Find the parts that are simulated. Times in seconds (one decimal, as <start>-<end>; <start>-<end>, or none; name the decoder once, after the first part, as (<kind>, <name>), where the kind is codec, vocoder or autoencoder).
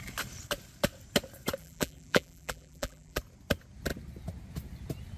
1.6-3.2 (vocoder, BigVGAN v2)